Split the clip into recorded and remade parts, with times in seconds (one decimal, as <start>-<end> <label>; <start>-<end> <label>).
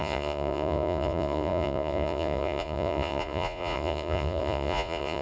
0.0-5.2 remade